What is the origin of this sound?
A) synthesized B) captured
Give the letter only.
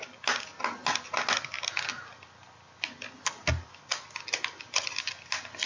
B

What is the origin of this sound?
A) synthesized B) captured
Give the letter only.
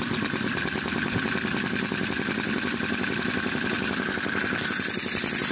B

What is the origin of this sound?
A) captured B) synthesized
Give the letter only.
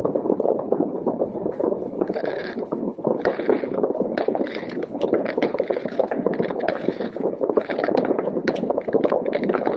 B